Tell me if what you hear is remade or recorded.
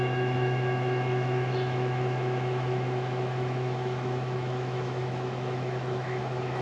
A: remade